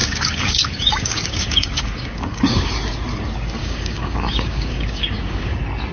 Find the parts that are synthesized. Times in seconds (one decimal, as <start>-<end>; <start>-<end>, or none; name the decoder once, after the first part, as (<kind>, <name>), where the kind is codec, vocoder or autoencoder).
0.0-2.7 (codec, DAC); 3.6-5.5